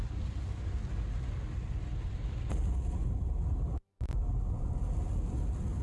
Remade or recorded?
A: recorded